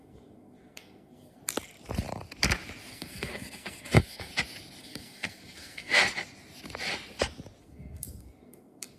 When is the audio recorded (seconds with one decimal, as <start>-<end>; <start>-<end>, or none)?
1.4-2.9; 4.3-4.8; 6.0-7.6